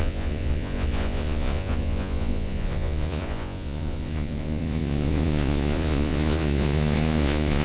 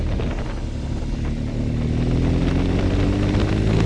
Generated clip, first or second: first